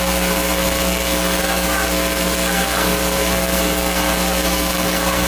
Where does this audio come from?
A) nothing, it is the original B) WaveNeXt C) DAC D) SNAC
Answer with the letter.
D